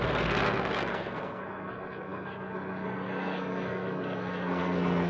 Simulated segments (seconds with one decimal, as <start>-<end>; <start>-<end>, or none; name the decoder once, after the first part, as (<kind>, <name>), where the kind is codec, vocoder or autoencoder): 0.0-5.1 (codec, SNAC)